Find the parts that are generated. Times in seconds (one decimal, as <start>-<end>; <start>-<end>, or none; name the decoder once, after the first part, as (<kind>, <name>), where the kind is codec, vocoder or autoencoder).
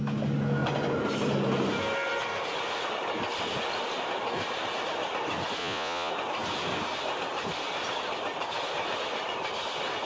5.6-6.1 (vocoder, Vocos)